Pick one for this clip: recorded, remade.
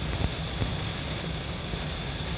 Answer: recorded